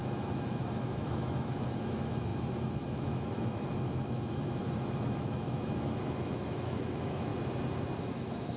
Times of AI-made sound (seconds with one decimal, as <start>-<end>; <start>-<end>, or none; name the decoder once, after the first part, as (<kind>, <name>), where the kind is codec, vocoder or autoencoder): 0.0-7.3 (autoencoder, DAC-VAE); 8.0-8.6